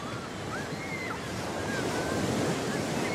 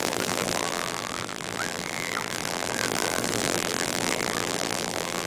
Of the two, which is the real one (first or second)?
first